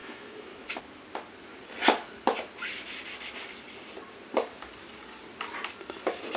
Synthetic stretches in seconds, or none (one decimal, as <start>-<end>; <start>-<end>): 0.0-0.8